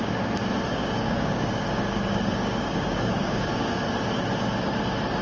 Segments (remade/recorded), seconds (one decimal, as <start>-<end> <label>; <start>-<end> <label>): 0.0-0.7 recorded; 0.7-3.8 remade; 3.8-5.2 recorded